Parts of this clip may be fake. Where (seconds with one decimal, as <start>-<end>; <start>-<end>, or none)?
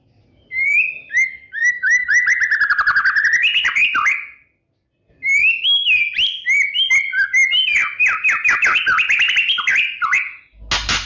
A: 1.6-2.1